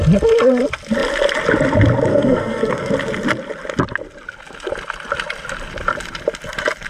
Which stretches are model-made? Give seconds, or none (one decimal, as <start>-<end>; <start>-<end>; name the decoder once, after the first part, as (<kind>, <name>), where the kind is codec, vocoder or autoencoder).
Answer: 2.1-2.9 (codec, SNAC)